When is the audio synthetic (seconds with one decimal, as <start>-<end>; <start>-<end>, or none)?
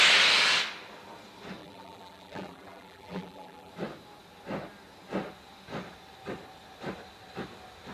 1.6-3.7